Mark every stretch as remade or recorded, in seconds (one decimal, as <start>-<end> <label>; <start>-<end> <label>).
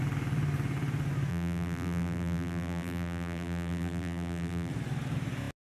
0.0-1.3 recorded; 1.3-4.7 remade; 4.7-5.7 recorded